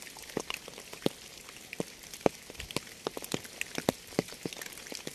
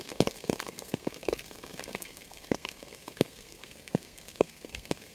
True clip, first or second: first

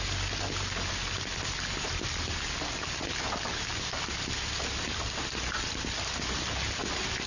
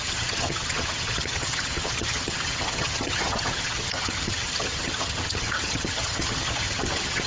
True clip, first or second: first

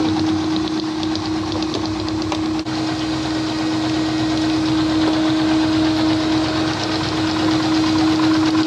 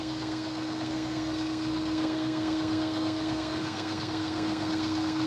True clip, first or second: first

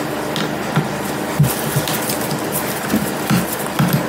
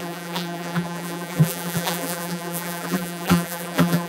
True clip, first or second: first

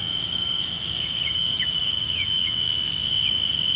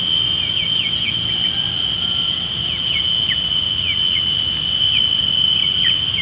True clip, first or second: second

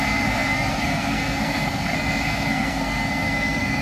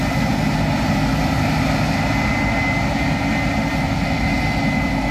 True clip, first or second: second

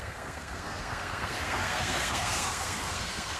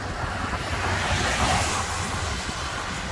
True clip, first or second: second